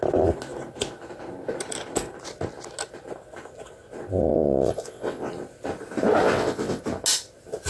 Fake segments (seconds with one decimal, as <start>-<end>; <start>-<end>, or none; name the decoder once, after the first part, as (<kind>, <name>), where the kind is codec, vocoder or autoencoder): 4.3-5.3 (vocoder, WaveNeXt); 6.2-6.8